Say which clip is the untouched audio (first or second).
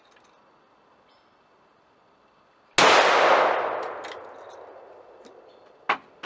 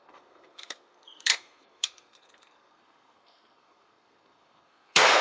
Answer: first